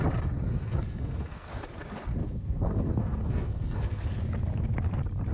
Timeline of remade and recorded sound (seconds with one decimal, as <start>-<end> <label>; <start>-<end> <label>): 0.0-0.5 recorded; 0.5-1.5 remade; 1.5-2.2 recorded; 2.2-4.0 remade; 4.0-5.3 recorded